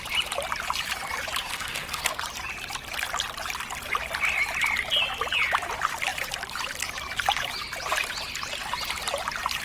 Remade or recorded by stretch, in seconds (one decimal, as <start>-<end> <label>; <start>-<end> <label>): 0.0-1.4 recorded; 1.4-2.2 remade; 2.2-9.6 recorded